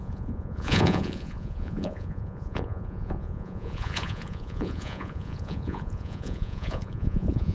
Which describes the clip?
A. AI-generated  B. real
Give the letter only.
A